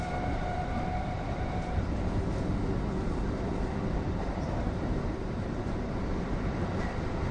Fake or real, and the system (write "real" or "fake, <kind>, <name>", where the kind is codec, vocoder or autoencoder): fake, vocoder, BigVGAN v2